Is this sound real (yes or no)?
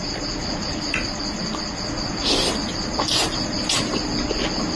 yes